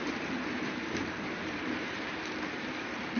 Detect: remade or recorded remade